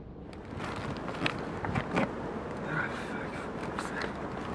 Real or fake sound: real